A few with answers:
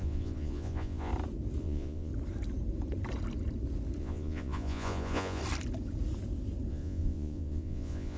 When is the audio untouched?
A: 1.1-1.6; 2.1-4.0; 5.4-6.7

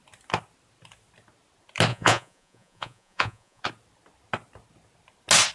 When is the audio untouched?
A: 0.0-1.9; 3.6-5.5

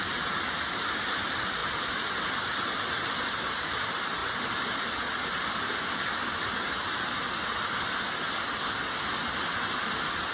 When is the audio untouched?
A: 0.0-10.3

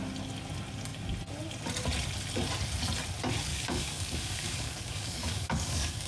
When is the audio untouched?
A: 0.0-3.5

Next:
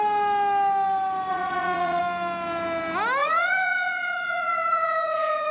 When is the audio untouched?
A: 0.0-1.3; 2.0-3.2

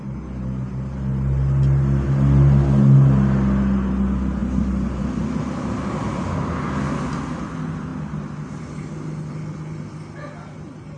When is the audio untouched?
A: 0.0-11.0

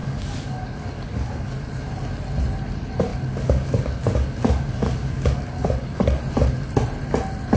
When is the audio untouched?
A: 1.7-3.1; 6.2-7.6